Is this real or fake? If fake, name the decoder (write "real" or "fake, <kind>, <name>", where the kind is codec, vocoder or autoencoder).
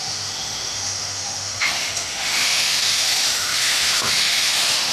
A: fake, autoencoder, DAC-VAE